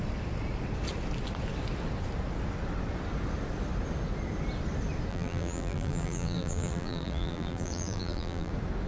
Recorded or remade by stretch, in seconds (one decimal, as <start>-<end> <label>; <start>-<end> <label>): 0.0-5.1 recorded; 5.1-8.5 remade; 8.5-8.9 recorded